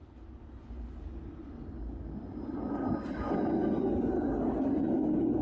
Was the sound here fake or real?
real